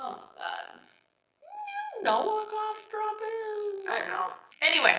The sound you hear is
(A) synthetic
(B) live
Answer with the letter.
A